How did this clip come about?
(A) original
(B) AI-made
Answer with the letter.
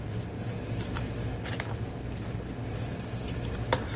A